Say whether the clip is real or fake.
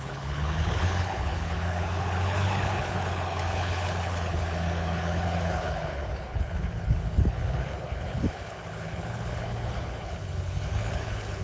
fake